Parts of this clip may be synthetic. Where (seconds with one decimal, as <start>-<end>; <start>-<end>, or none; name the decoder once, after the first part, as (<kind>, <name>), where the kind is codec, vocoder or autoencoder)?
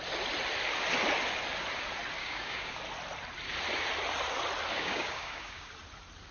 2.2-2.8 (codec, DAC); 4.7-5.7